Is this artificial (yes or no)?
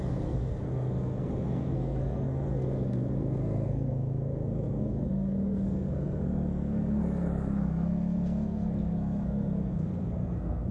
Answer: yes